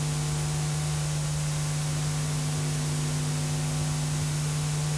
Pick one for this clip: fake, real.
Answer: real